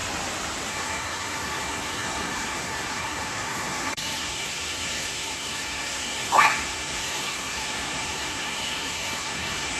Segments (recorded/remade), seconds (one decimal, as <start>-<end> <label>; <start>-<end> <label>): 0.0-0.7 recorded; 0.7-9.8 remade